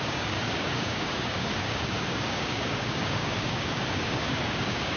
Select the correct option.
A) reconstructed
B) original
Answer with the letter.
A